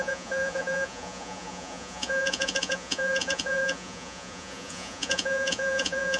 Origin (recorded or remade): remade